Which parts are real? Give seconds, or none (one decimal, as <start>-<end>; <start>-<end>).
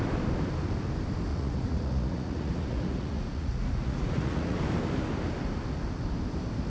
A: 0.0-1.3; 4.6-6.7